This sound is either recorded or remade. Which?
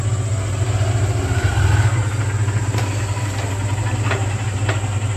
recorded